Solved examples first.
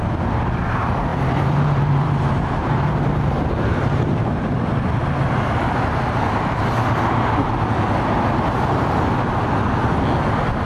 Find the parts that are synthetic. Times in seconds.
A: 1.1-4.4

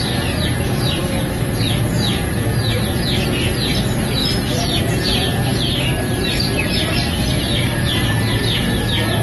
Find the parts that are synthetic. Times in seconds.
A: 5.5-8.2

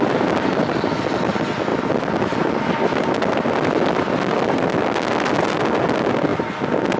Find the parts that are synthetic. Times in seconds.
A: none

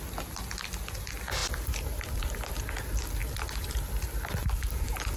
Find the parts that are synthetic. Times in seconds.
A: 1.4-2.6; 3.2-3.9